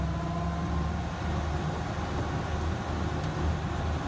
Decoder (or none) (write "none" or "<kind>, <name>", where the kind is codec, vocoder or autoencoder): none